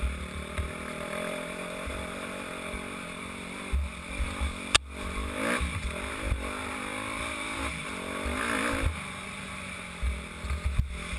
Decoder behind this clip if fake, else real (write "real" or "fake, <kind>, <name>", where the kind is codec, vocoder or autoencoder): real